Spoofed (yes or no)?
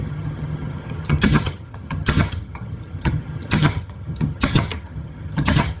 yes